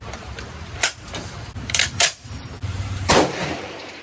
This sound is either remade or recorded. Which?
remade